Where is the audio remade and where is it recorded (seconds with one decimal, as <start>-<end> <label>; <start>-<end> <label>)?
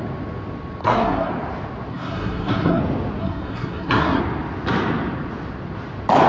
0.0-0.8 recorded; 0.8-1.3 remade; 1.3-1.9 recorded; 1.9-2.8 remade; 2.8-3.2 recorded; 3.2-4.2 remade; 4.2-6.3 recorded